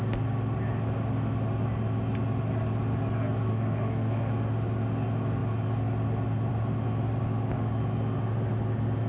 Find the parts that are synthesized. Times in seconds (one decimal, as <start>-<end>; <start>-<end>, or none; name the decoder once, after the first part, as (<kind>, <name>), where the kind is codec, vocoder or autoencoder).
3.5-4.3 (autoencoder, DAC-VAE)